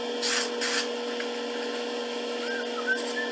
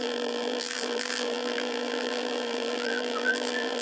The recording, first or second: first